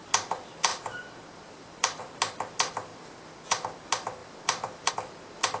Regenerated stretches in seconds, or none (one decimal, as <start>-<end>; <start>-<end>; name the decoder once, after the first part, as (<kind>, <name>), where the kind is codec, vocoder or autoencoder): 0.7-2.0 (vocoder, BigVGAN v2); 4.2-4.9